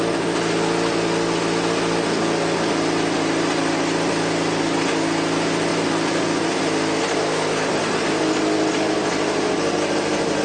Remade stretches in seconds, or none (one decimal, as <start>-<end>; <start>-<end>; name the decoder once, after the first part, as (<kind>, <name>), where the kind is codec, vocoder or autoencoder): none